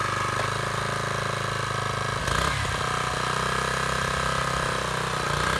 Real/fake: real